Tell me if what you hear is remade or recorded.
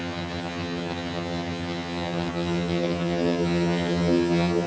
remade